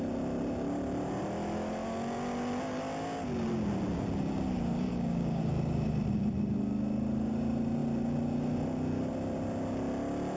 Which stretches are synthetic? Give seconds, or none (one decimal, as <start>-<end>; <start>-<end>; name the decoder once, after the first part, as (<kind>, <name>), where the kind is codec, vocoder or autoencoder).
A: 4.9-5.4 (codec, DAC)